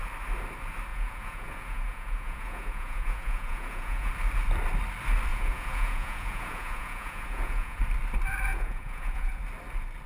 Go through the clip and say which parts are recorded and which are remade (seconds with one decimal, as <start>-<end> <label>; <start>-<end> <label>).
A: 0.0-0.9 recorded; 0.9-4.1 remade; 4.1-5.3 recorded; 5.3-7.8 remade; 7.8-8.5 recorded; 8.5-9.4 remade; 9.4-10.1 recorded